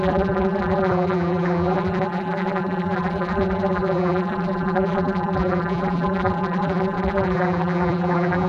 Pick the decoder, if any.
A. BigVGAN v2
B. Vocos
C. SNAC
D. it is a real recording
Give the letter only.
A